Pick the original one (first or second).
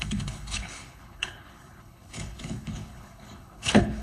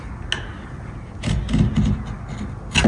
second